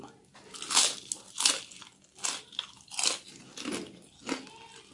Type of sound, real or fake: real